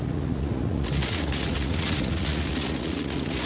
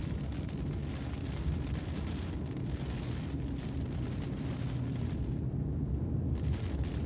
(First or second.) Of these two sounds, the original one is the second